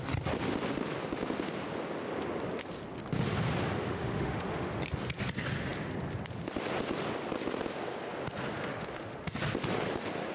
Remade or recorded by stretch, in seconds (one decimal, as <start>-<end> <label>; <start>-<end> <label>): 0.0-3.9 recorded; 3.9-4.8 remade; 4.8-8.7 recorded; 8.7-9.3 remade; 9.3-10.3 recorded